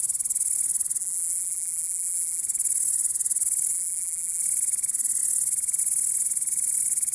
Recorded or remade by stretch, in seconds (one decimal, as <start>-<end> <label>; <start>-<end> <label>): 0.0-1.0 recorded; 1.0-2.4 remade; 2.4-3.7 recorded; 3.7-4.4 remade; 4.4-7.1 recorded